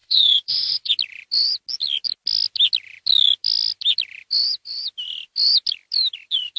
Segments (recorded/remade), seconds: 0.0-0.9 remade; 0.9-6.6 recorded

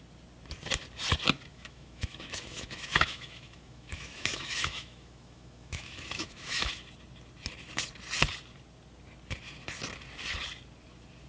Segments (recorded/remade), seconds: 0.0-1.5 recorded; 1.5-6.7 remade; 6.7-11.3 recorded

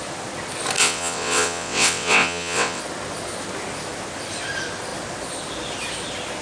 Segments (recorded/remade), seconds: 0.0-0.8 recorded; 0.8-2.8 remade; 2.8-6.4 recorded

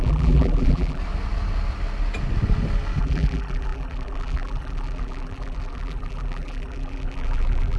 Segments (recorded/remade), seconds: 0.0-1.0 remade; 1.0-3.0 recorded; 3.0-7.8 remade

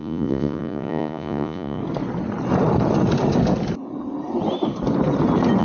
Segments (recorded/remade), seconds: 0.0-1.8 remade; 1.8-5.6 recorded

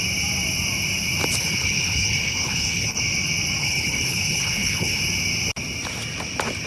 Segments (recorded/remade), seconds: 0.0-1.4 recorded; 1.4-3.0 remade; 3.0-3.6 recorded; 3.6-5.0 remade; 5.0-6.7 recorded